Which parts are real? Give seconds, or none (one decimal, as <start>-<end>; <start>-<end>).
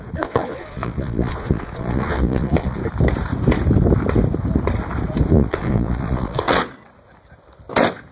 2.8-5.3; 6.7-8.1